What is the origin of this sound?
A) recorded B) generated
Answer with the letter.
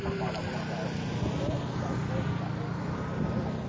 A